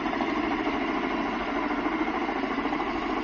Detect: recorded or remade recorded